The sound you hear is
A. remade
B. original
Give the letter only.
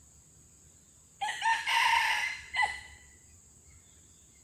B